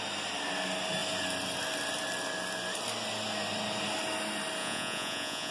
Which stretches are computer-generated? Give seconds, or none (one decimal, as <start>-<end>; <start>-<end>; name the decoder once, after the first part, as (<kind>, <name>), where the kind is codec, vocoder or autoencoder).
4.6-5.5 (vocoder, Vocos)